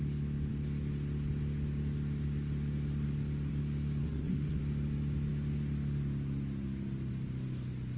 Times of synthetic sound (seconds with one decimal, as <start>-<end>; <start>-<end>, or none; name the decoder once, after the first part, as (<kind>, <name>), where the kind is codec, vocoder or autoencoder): 4.0-4.6 (codec, SNAC)